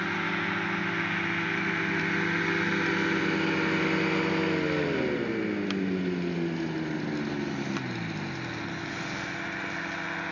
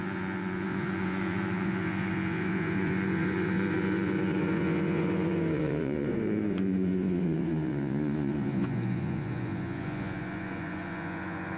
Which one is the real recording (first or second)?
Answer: first